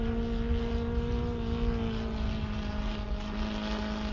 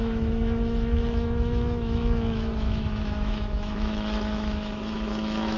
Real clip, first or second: first